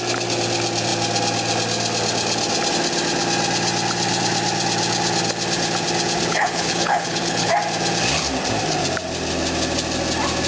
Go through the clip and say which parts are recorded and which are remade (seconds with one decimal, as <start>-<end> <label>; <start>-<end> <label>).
0.0-6.3 recorded; 6.3-7.5 remade; 7.5-10.5 recorded